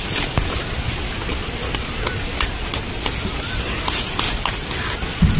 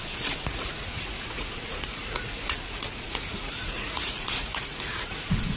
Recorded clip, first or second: first